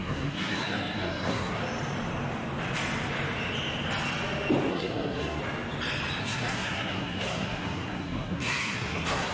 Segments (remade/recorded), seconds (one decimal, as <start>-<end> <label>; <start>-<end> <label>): 0.0-1.6 remade; 1.6-4.7 recorded; 4.7-5.4 remade; 5.4-6.2 recorded; 6.2-9.3 remade